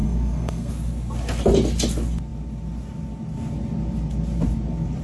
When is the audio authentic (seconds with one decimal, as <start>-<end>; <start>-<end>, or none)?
0.7-5.0